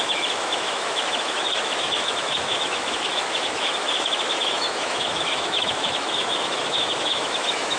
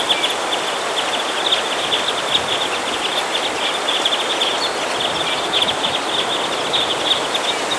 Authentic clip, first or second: second